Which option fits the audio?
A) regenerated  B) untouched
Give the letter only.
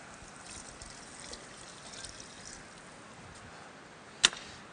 B